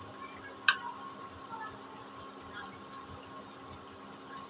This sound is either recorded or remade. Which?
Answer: recorded